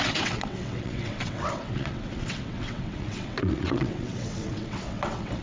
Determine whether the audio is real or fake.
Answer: fake